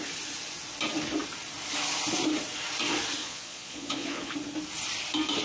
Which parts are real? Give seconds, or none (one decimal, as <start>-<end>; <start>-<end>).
0.0-3.2; 4.3-5.4